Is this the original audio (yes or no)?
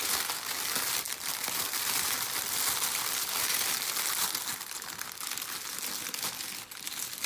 yes